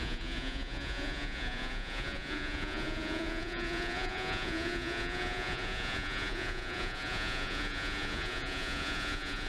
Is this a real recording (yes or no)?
no